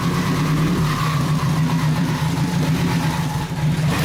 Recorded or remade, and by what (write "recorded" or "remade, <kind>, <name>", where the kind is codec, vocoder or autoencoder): remade, vocoder, BigVGAN v2